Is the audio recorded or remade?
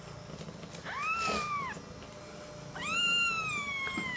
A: recorded